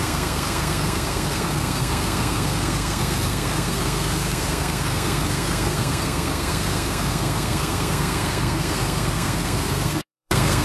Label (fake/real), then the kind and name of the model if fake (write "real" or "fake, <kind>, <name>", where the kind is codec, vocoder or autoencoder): fake, codec, SNAC